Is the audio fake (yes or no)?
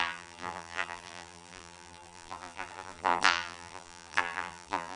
yes